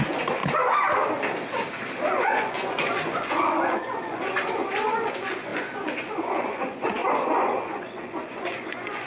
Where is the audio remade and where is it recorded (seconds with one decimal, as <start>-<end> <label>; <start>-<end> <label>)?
0.0-0.4 remade; 0.4-2.1 recorded; 2.1-9.1 remade